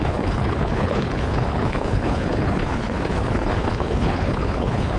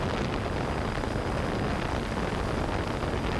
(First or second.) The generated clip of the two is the first